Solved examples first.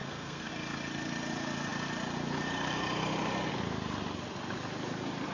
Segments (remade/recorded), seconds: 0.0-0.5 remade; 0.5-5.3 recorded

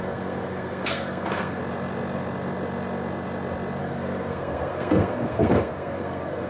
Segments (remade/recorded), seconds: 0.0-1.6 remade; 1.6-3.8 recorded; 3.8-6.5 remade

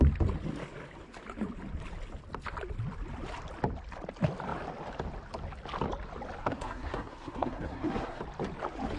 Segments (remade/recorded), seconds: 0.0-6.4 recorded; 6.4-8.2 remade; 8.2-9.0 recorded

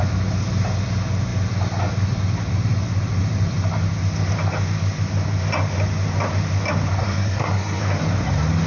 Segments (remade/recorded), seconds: 0.0-7.0 recorded; 7.0-7.8 remade; 7.8-8.7 recorded

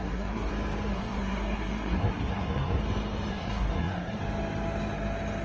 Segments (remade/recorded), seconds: 0.0-0.5 remade; 0.5-0.9 recorded; 0.9-2.8 remade; 2.8-3.3 recorded; 3.3-4.2 remade; 4.2-5.4 recorded

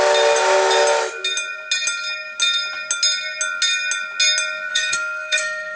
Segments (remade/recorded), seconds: 0.0-4.7 recorded; 4.7-5.8 remade